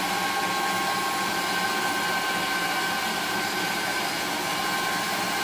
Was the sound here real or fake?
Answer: real